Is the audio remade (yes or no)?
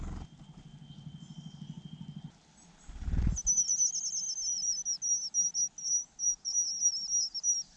no